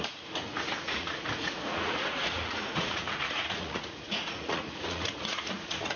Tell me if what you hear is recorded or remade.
remade